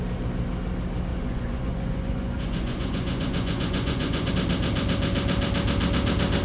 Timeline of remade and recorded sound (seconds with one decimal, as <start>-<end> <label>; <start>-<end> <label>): 0.0-1.1 recorded; 1.1-4.3 remade; 4.3-6.4 recorded